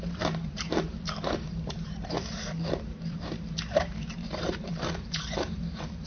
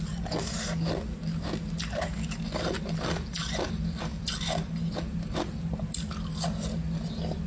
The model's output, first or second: first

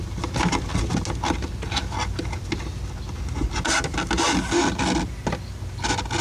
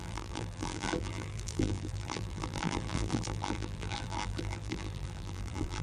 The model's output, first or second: second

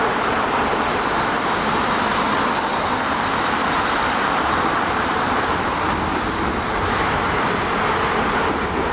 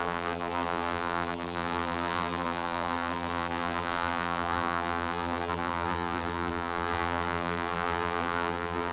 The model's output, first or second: second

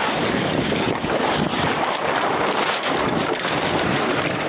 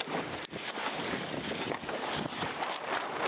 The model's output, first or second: first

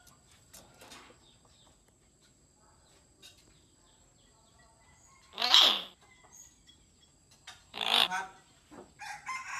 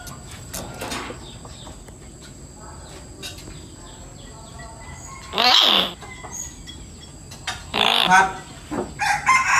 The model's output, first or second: first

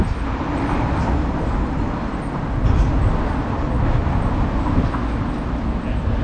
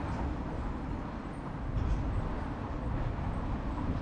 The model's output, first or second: second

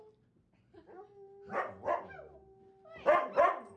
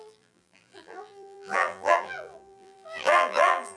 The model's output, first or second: second